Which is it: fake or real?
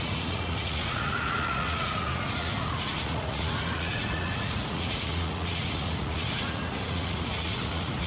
fake